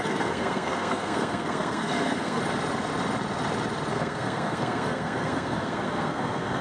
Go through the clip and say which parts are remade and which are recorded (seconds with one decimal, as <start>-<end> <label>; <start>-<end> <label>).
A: 0.0-2.4 remade; 2.4-3.9 recorded; 3.9-6.6 remade